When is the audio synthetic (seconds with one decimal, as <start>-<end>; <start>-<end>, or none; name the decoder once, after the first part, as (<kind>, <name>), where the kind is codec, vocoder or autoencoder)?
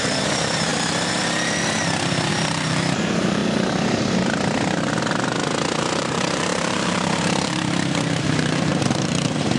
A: 0.0-0.7 (vocoder, BigVGAN v2); 2.3-3.4; 5.8-9.6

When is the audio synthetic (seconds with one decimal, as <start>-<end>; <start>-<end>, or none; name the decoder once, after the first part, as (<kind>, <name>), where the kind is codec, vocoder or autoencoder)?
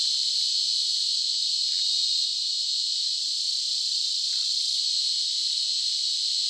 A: 0.0-6.5 (vocoder, BigVGAN v2)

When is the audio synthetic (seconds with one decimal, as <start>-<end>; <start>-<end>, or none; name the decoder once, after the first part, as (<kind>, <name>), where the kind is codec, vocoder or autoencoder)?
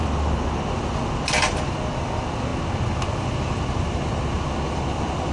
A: none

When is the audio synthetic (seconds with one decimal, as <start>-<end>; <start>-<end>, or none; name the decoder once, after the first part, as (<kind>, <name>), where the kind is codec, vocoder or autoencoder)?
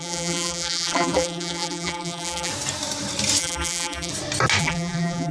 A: 0.0-2.5 (vocoder, BigVGAN v2); 3.4-4.1; 4.6-5.3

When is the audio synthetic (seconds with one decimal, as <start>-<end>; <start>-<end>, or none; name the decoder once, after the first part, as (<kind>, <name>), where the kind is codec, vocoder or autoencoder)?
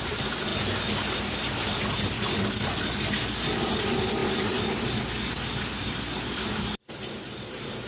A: 4.2-5.0 (vocoder, BigVGAN v2)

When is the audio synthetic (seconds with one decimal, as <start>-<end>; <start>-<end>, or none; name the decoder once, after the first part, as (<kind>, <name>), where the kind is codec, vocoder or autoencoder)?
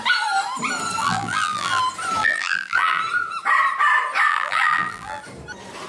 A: 1.0-1.8 (vocoder, BigVGAN v2); 2.2-3.0; 4.3-5.2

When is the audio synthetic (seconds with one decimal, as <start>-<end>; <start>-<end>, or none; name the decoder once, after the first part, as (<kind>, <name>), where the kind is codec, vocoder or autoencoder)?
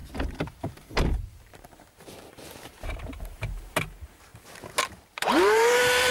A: 0.0-4.3 (vocoder, BigVGAN v2); 4.9-6.1